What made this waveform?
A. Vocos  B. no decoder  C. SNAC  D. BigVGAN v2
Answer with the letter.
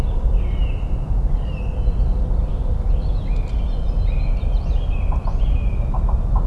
B